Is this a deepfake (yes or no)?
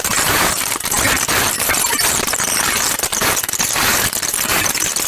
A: yes